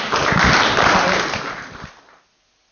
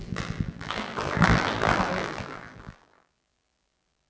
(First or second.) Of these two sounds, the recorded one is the first